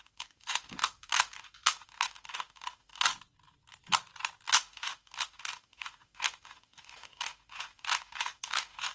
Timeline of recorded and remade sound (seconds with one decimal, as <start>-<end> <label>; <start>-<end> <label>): 0.0-3.1 remade; 3.1-4.5 recorded; 4.5-8.9 remade